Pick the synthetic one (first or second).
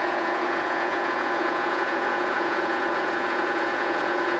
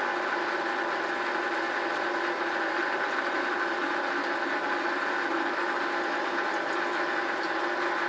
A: first